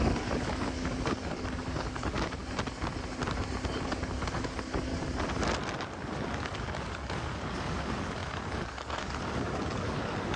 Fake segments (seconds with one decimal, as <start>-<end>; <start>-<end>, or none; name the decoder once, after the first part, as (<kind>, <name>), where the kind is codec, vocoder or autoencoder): 0.0-2.4 (codec, DAC); 3.8-4.9; 6.4-10.4